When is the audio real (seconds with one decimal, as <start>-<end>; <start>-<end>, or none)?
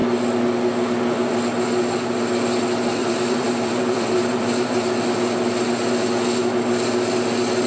0.0-3.0; 4.9-7.7